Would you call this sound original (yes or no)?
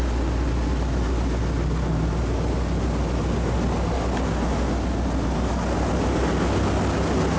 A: yes